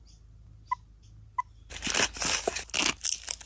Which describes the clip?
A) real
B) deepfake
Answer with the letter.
A